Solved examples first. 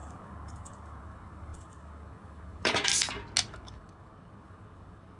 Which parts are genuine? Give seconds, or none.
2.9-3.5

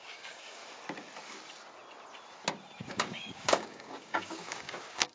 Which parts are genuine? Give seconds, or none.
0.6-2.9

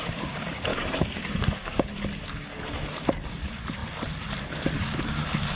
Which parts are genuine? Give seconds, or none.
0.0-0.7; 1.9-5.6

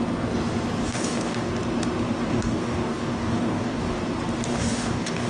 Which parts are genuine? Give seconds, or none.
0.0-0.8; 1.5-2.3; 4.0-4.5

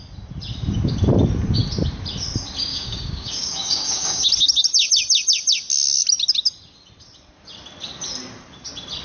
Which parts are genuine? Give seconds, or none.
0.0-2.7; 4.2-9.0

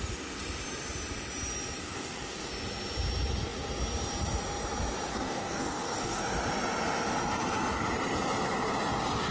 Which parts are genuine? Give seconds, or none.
0.0-1.8; 2.5-5.1; 6.2-9.3

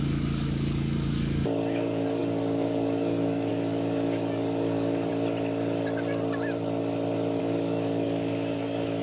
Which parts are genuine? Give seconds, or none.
5.1-7.4